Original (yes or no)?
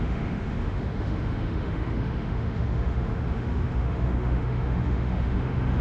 no